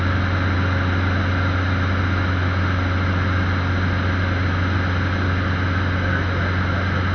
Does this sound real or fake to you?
real